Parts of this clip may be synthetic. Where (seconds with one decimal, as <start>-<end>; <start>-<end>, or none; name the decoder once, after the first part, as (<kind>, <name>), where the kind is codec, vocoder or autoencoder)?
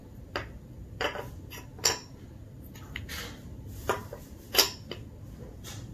none